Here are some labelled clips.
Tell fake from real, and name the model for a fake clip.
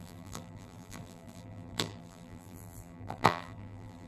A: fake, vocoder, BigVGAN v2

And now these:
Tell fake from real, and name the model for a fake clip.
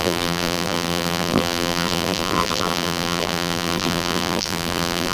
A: fake, vocoder, BigVGAN v2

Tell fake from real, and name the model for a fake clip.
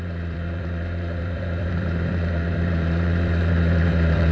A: fake, vocoder, BigVGAN v2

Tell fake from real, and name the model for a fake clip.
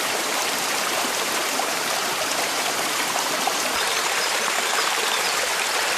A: fake, vocoder, BigVGAN v2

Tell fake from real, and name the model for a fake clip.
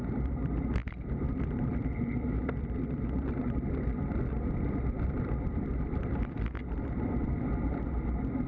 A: fake, vocoder, BigVGAN v2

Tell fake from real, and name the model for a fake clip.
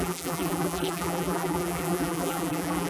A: fake, vocoder, BigVGAN v2